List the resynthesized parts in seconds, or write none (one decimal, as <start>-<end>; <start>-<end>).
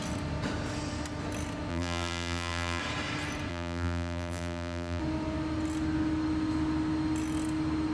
1.7-2.8; 3.5-5.0